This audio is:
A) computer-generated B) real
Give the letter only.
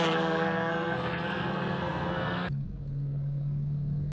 A